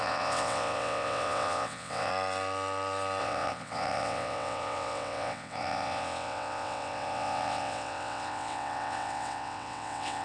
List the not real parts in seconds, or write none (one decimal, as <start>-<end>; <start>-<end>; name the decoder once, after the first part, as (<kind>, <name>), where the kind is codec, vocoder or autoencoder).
0.0-2.1 (vocoder, WaveNeXt); 3.2-10.2